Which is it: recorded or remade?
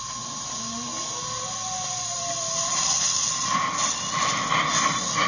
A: recorded